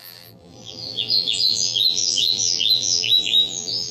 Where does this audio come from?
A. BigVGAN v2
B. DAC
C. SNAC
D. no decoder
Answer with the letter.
A